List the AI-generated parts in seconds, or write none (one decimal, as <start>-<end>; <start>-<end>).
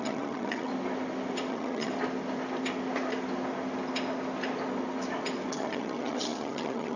0.0-0.7; 1.5-1.9; 5.5-7.0